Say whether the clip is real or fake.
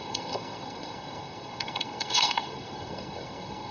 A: fake